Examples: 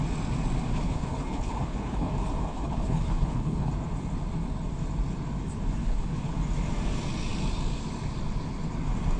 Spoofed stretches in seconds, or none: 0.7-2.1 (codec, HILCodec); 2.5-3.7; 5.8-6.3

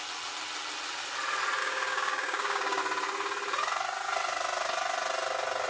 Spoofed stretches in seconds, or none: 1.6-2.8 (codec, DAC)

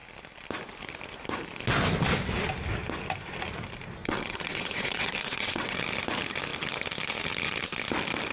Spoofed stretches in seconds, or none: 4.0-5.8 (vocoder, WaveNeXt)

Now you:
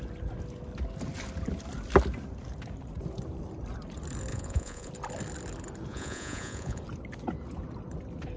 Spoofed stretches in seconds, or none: 4.3-4.9 (vocoder, Vocos); 5.9-6.8

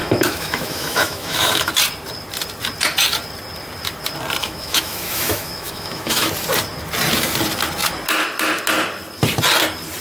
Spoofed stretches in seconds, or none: 0.0-1.7 (autoencoder, DAC-VAE); 4.4-6.3

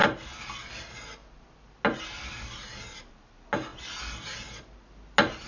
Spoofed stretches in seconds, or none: none